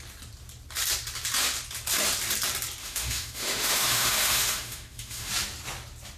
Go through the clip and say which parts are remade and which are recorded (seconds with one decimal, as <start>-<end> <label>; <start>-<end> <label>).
0.0-2.8 recorded; 2.8-5.3 remade; 5.3-6.2 recorded